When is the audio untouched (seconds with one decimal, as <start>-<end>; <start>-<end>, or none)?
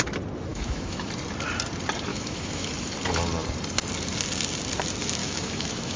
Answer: 0.0-0.5; 1.1-2.1; 2.7-5.2